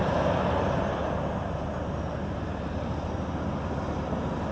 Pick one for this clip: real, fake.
real